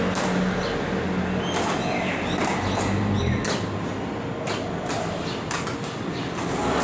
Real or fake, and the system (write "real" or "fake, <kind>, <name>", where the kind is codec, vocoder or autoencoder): real